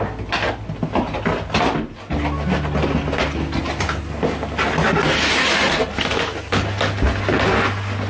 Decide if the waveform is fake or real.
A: real